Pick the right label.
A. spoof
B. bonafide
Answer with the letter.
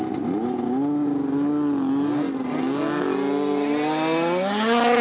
B